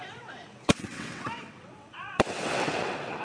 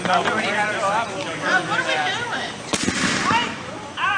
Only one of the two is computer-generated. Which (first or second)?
first